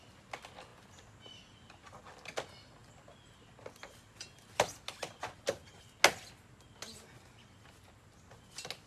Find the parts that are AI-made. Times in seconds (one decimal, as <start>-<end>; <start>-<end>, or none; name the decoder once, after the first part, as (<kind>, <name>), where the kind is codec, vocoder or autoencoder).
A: none